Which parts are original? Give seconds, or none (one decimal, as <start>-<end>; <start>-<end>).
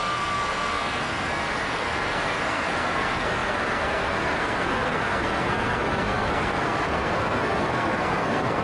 none